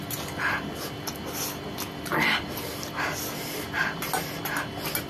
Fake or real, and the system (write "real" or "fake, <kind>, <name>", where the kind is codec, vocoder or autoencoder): real